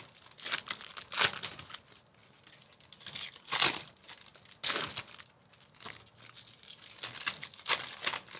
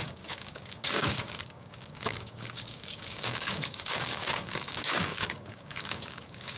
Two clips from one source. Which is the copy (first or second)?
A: second